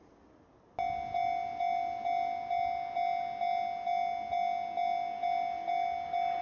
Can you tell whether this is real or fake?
real